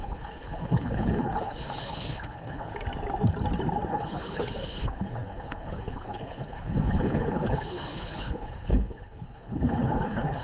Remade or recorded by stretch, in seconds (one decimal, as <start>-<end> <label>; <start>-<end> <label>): 0.0-2.7 remade; 2.7-3.9 recorded; 3.9-10.4 remade